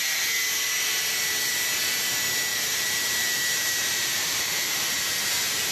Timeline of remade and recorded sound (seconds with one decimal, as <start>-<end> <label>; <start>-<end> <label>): 0.0-2.5 recorded; 2.5-5.3 remade; 5.3-5.7 recorded